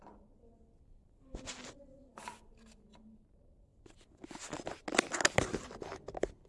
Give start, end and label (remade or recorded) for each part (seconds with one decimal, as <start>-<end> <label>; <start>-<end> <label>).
0.0-6.5 recorded